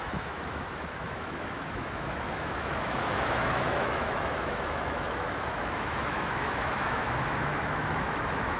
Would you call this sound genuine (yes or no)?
no